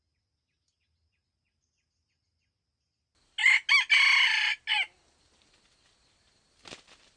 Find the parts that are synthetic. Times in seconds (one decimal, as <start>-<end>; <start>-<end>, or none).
none